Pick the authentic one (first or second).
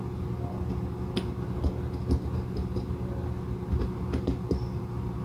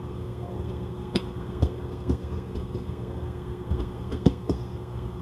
first